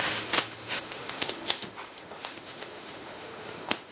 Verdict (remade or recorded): remade